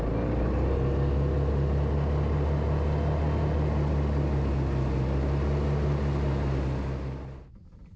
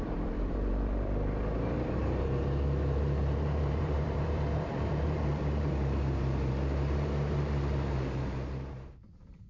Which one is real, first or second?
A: first